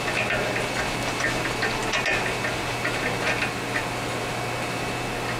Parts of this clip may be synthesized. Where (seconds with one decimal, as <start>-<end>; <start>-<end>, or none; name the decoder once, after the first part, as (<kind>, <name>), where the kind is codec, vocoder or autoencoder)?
none